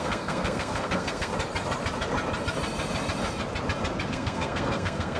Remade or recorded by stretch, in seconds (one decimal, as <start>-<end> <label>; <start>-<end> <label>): 0.0-1.3 remade; 1.3-4.1 recorded; 4.1-5.2 remade